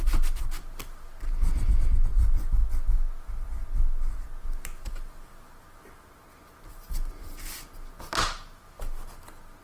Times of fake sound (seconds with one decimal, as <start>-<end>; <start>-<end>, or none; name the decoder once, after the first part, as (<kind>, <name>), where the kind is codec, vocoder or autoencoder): none